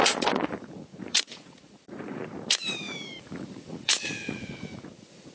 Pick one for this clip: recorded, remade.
remade